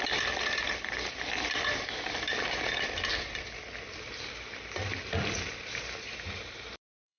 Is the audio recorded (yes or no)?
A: no